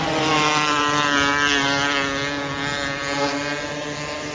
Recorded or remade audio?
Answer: recorded